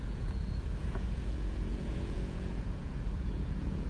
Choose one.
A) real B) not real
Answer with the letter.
B